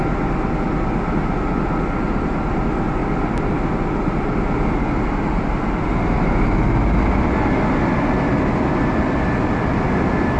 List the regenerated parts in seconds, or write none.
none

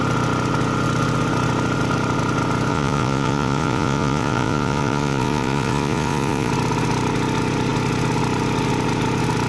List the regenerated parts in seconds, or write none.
2.7-6.5 (vocoder, Vocos)

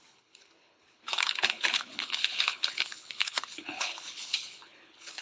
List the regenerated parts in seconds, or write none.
0.0-5.2 (codec, HILCodec)

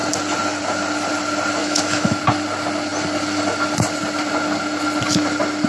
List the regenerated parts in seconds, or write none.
1.6-2.2 (autoencoder, DAC-VAE)

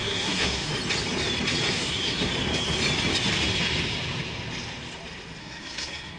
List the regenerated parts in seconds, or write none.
0.0-0.7 (codec, SNAC); 1.7-2.3; 5.4-6.2

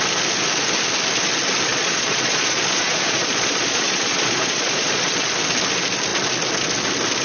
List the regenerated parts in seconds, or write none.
1.7-5.3 (vocoder, Vocos)

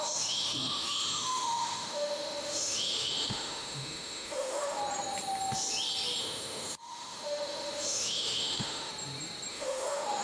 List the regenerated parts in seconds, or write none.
0.0-4.8 (autoencoder, DAC-VAE); 6.2-8.9; 9.5-10.2